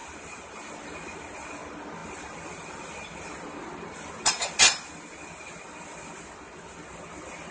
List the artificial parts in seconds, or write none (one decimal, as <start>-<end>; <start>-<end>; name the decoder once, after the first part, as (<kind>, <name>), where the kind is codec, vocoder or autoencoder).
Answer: none